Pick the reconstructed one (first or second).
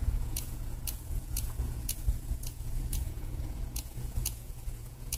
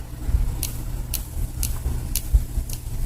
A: first